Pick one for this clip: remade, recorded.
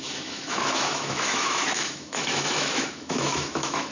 remade